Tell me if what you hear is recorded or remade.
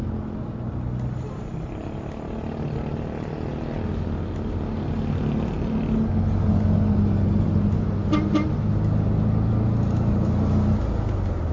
recorded